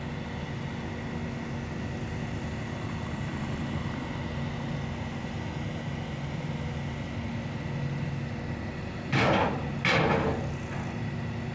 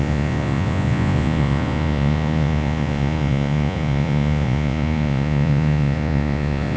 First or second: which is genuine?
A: first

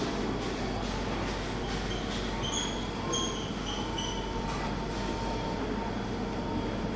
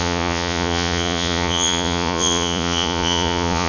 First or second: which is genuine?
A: first